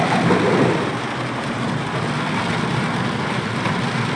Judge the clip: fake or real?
real